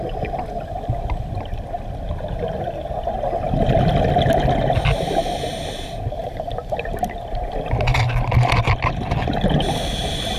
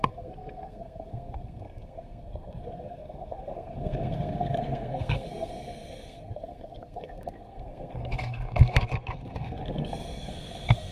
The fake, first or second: second